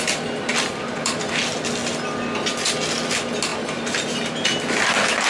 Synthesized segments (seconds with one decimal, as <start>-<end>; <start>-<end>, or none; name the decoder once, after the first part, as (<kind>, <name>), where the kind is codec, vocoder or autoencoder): 0.5-1.3 (vocoder, BigVGAN v2); 3.5-4.3